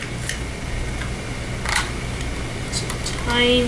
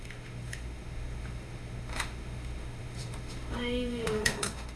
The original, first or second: first